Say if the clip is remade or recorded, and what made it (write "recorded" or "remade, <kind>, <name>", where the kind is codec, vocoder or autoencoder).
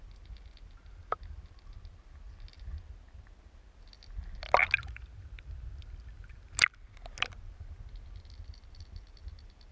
recorded